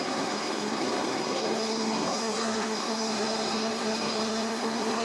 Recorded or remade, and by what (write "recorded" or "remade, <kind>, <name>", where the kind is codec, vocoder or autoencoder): remade, codec, SNAC